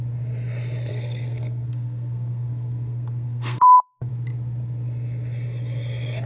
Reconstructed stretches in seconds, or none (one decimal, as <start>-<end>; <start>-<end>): 0.9-4.1